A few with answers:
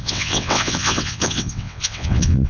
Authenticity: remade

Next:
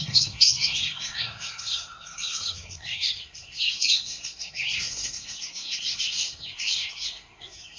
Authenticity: remade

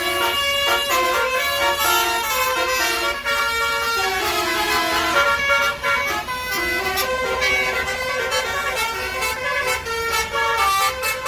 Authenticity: recorded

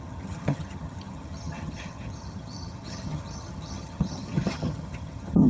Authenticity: remade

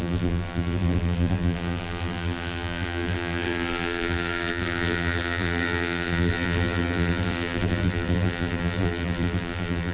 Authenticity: remade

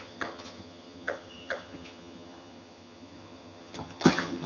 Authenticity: remade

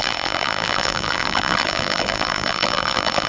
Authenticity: remade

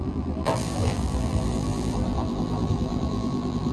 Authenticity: remade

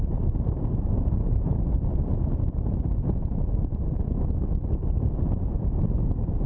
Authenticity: recorded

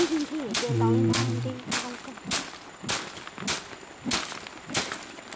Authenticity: recorded